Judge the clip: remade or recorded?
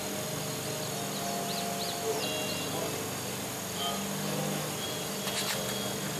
recorded